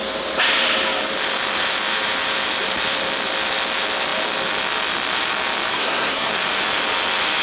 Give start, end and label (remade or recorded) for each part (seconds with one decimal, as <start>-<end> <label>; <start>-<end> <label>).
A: 0.0-5.7 recorded; 5.7-6.3 remade; 6.3-7.4 recorded